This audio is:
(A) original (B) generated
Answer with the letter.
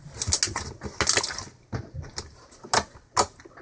A